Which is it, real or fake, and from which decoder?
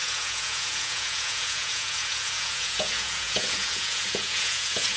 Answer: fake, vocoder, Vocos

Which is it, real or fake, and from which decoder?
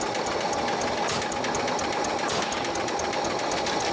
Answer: real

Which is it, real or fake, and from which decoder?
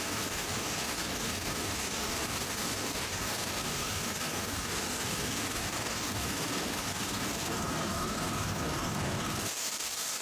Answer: fake, codec, DAC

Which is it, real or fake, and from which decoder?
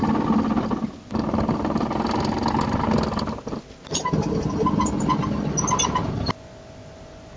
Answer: real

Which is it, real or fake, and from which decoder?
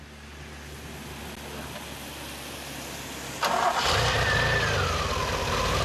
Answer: real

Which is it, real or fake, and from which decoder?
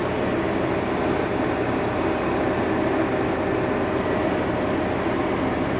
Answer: real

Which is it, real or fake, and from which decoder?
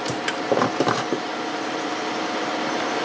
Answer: real